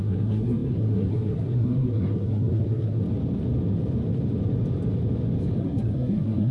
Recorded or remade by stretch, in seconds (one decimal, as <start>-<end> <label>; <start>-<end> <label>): 0.0-3.0 remade; 3.0-5.6 recorded; 5.6-6.5 remade